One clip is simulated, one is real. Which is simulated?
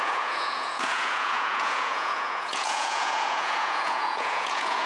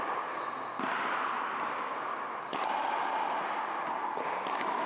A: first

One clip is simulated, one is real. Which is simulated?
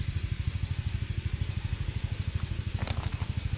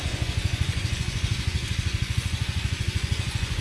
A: second